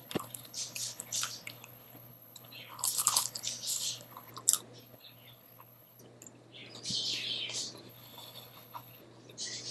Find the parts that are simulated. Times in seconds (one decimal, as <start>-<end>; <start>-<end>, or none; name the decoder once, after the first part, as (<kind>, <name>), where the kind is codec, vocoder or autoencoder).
0.0-4.3 (codec, HILCodec); 4.8-6.0; 7.9-9.0